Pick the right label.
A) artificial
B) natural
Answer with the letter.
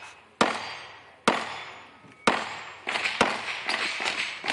B